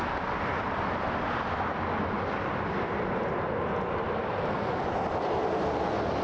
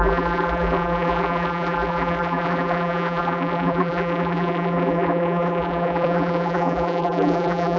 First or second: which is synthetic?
second